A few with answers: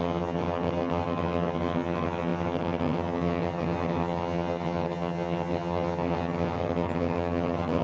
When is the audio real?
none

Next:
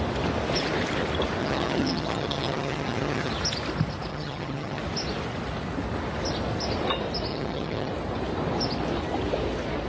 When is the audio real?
0.0-1.4; 3.3-4.1; 4.8-7.3; 7.9-9.9

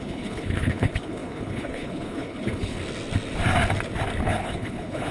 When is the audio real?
2.8-4.2

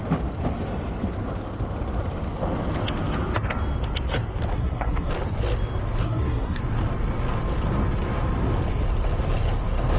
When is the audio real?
0.0-4.5; 5.1-6.0; 6.6-10.0

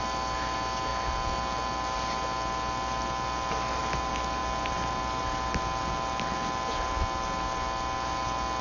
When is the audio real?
0.0-8.6